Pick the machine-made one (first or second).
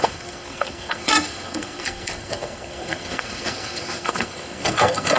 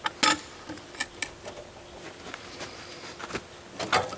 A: first